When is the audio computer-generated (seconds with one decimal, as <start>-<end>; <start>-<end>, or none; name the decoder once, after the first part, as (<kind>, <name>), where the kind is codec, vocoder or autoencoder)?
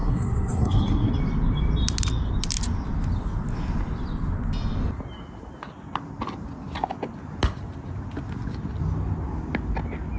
0.0-1.1 (codec, SNAC)